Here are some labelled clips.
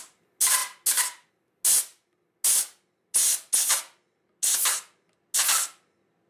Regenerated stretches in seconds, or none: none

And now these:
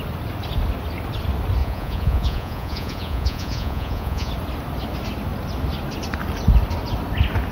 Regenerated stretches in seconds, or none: 1.6-4.3 (vocoder, Vocos)

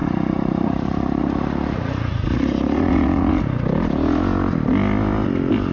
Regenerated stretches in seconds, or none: 0.0-3.4 (vocoder, Vocos)

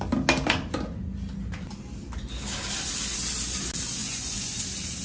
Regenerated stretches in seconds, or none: 4.0-4.6 (vocoder, Vocos)

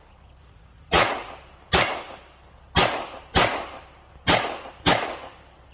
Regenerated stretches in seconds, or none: 0.4-1.3 (vocoder, Vocos)

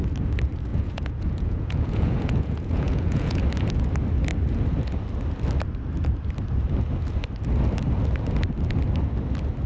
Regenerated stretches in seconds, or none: 0.7-3.4 (vocoder, Vocos)

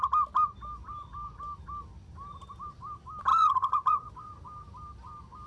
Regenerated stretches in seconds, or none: 3.3-4.1 (vocoder, Vocos)